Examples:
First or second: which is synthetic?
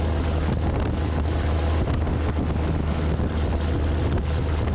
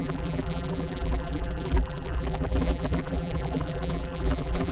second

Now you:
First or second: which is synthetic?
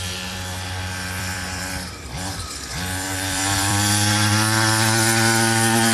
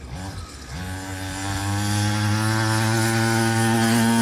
first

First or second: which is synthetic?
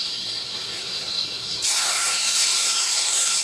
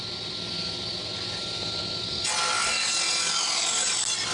first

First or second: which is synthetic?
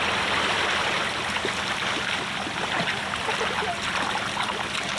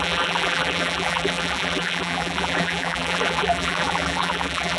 second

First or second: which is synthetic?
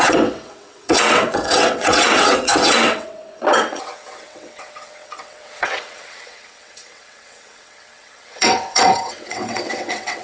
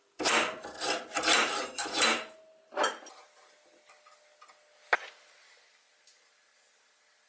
first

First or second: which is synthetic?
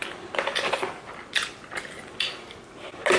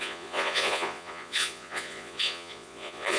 second